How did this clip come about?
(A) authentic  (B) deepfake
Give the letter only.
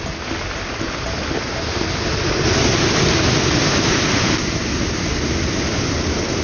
A